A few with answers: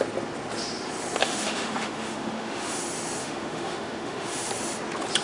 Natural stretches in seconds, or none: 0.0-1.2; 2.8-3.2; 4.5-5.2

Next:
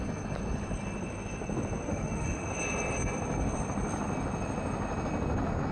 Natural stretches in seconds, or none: 0.0-1.9; 2.5-5.7

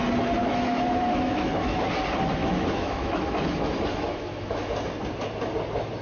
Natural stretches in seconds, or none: 0.0-0.4; 1.9-2.4; 4.7-6.0

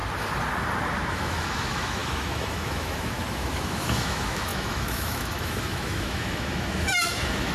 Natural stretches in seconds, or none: 0.0-1.1

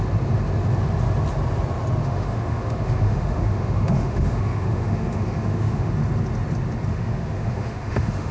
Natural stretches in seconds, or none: 0.0-2.0; 5.9-6.9

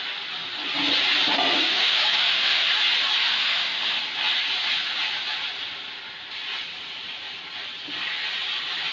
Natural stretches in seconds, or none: 0.0-1.7; 2.7-3.3; 4.0-8.9

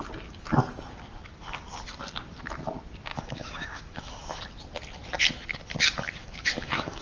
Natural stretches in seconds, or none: 0.0-3.1; 4.4-6.2